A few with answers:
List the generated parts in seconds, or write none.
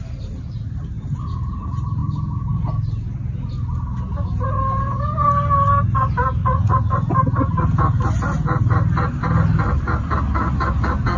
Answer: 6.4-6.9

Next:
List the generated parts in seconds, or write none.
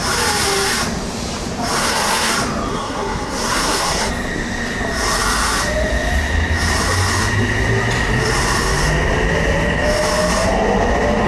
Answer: 1.8-2.3; 2.7-4.1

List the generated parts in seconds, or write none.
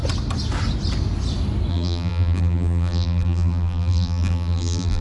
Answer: 1.7-5.0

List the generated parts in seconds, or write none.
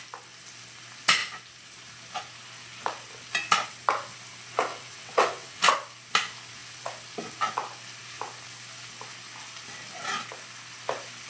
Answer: 4.7-5.7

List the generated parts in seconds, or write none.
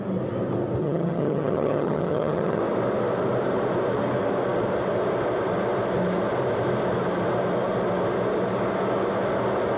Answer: 0.8-2.6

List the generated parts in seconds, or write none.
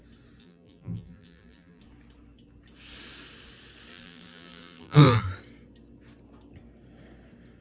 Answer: 0.4-1.8; 3.9-5.2